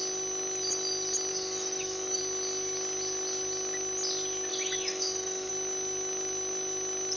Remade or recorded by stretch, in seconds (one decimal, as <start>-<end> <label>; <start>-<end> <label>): 0.0-1.3 recorded; 1.3-2.2 remade; 2.2-4.5 recorded; 4.5-5.5 remade; 5.5-7.2 recorded